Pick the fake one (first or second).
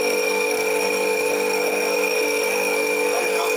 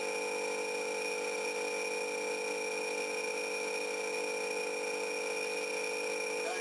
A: first